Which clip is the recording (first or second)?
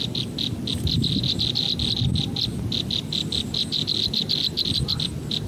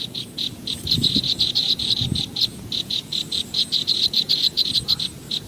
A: first